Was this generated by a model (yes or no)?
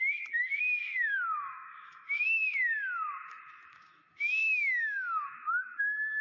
yes